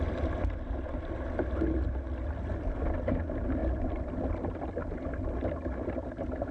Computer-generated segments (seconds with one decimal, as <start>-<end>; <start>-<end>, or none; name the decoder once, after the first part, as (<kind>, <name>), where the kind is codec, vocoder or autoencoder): none